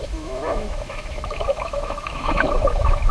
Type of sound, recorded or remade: remade